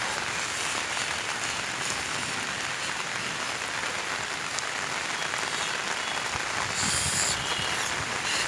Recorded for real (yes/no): yes